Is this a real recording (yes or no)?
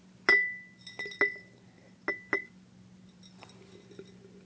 yes